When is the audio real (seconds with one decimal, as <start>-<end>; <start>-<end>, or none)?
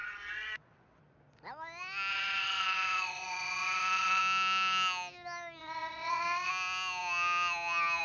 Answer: 1.0-2.1; 4.2-5.6; 6.5-8.0